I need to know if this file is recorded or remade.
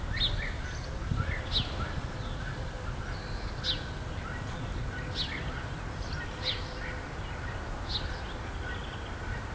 recorded